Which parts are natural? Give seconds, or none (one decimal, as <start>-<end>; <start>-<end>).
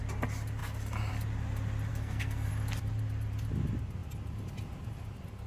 0.0-1.9; 2.5-5.5